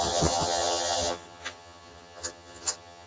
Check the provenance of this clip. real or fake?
fake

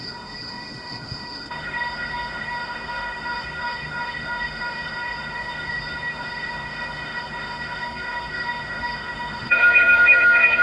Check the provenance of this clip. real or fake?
fake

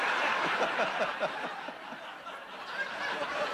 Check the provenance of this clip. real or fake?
fake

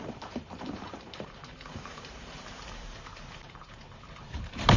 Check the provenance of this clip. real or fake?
fake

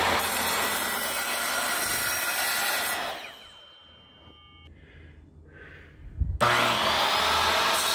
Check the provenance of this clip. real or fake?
real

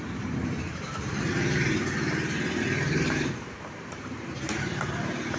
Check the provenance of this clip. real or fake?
fake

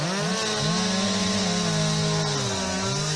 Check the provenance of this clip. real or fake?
real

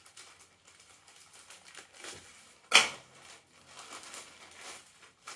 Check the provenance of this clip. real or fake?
real